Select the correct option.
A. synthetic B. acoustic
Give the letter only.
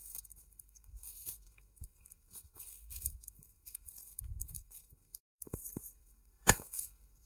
A